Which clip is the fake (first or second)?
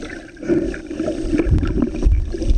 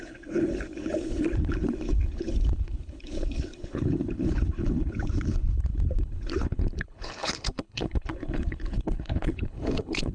second